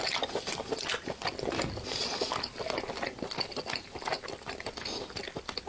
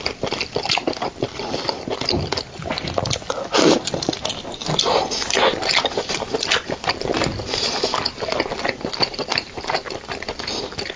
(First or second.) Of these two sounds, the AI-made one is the second